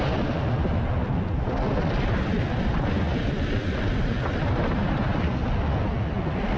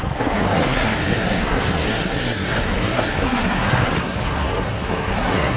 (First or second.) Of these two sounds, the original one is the first